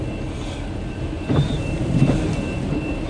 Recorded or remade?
recorded